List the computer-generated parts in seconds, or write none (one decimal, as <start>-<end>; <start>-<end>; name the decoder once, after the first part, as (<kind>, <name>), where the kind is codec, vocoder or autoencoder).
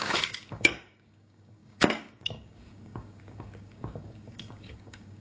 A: 0.0-5.2 (codec, DAC)